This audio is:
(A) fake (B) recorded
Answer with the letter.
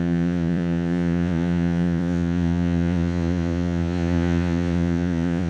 A